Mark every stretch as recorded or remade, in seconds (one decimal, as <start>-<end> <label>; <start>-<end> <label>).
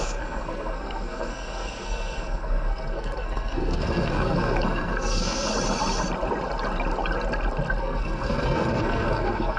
0.0-5.5 remade; 5.5-7.8 recorded; 7.8-9.6 remade